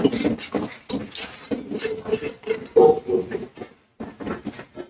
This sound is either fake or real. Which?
real